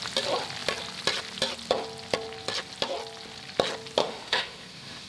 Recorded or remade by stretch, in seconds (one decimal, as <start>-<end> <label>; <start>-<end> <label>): 0.0-4.0 recorded; 4.0-5.1 remade